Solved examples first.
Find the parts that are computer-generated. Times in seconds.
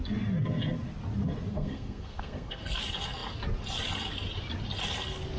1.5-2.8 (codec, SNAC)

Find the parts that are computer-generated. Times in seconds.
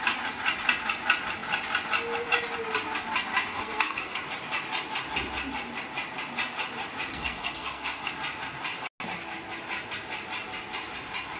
3.5-4.2 (codec, SNAC); 7.1-8.1